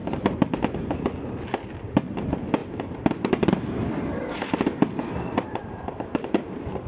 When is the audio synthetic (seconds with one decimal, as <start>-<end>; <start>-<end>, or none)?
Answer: 2.6-6.9